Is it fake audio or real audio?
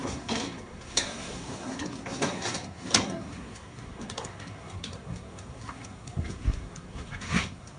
fake